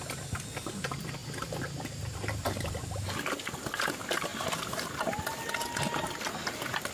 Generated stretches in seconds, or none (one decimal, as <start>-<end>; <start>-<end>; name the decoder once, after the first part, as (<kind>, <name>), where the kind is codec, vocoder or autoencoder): none